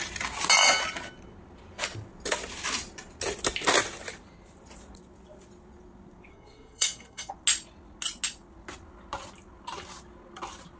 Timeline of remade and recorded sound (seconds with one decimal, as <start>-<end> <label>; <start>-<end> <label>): 0.0-6.3 recorded; 6.3-7.3 remade; 7.3-10.8 recorded